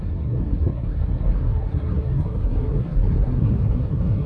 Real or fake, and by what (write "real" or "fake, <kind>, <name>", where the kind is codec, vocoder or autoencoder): fake, codec, SNAC